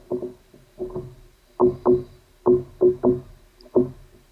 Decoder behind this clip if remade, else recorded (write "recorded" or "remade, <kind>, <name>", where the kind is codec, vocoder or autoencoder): recorded